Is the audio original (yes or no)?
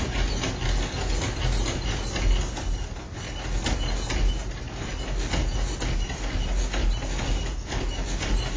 yes